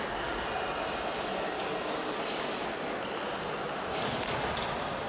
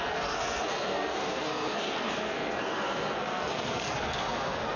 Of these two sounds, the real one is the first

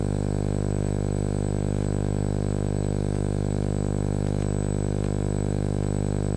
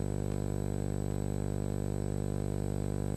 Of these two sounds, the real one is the second